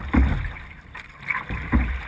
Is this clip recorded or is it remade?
recorded